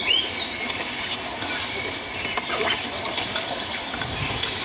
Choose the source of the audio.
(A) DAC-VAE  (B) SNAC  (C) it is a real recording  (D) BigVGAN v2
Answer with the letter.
C